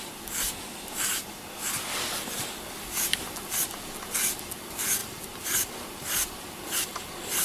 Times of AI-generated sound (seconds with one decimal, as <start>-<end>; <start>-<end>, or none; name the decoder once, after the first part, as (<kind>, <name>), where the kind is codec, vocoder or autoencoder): 5.0-5.7 (vocoder, BigVGAN v2)